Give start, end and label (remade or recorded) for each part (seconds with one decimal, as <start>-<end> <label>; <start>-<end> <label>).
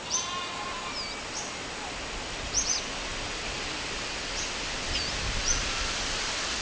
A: 0.0-6.6 recorded